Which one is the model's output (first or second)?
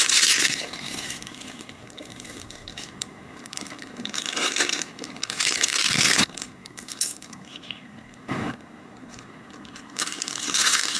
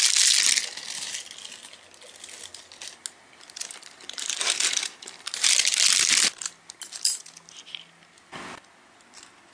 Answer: first